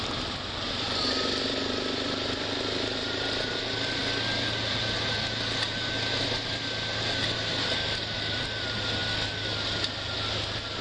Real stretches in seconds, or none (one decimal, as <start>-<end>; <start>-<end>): 0.0-3.0; 3.6-10.8